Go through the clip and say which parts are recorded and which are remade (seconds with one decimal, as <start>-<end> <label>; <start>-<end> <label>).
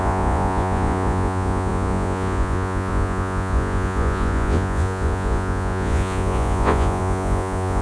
0.0-7.8 remade